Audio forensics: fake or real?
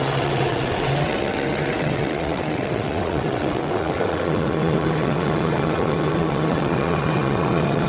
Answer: fake